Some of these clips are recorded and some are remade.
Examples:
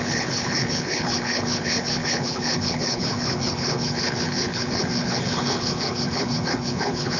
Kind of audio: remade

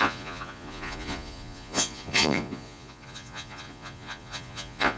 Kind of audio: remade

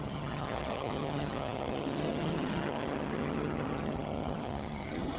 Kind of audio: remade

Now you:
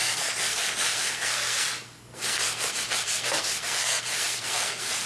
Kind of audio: remade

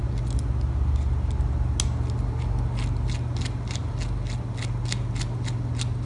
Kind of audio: recorded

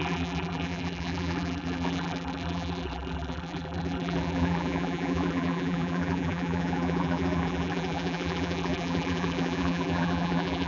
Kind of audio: remade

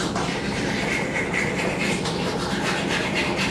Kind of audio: remade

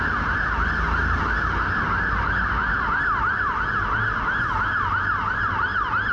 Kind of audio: recorded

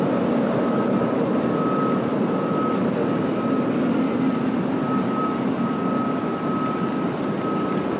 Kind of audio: recorded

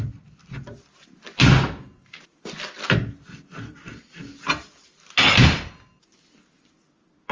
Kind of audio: recorded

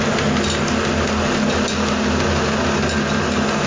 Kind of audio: recorded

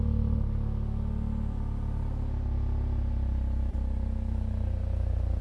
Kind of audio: recorded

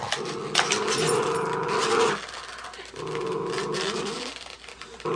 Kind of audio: recorded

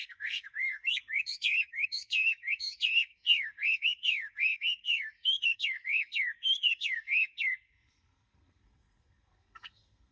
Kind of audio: remade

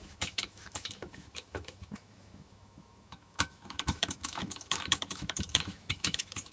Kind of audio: remade